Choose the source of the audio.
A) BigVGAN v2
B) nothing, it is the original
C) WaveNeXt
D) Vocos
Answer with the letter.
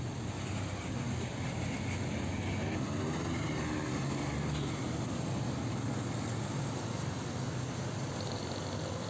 B